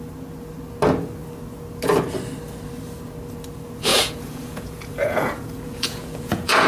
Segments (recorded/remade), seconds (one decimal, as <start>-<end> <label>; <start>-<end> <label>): 0.0-3.9 recorded; 3.9-6.7 remade

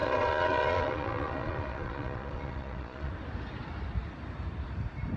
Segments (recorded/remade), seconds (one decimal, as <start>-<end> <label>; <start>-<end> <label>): 0.0-3.1 remade; 3.1-5.2 recorded

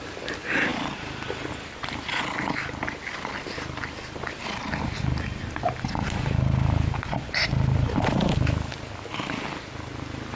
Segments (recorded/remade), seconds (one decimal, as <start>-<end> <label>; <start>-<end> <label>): 0.0-10.4 recorded

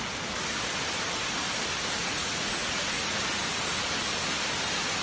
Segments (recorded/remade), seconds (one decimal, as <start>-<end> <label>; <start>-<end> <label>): 0.0-2.0 recorded; 2.0-3.2 remade; 3.2-5.0 recorded

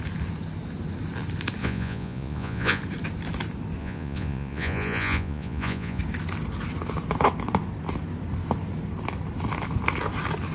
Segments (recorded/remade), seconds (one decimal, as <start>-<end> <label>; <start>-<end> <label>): 0.0-1.6 recorded; 1.6-2.8 remade; 2.8-3.8 recorded; 3.8-6.0 remade; 6.0-10.5 recorded

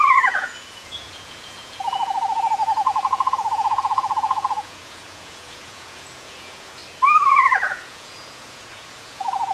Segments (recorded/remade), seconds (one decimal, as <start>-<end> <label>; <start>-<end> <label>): 0.0-6.8 remade; 6.8-7.3 recorded; 7.3-9.5 remade

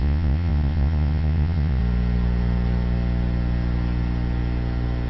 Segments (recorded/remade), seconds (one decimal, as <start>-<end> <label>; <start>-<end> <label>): 0.0-1.8 remade; 1.8-5.1 recorded